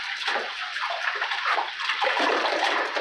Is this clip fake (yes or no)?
yes